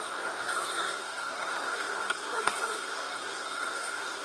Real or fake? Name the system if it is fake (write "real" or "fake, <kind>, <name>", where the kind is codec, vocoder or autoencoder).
fake, codec, SNAC